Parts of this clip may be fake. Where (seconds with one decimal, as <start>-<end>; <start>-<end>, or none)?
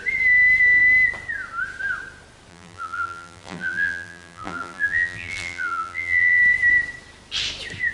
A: 2.5-6.4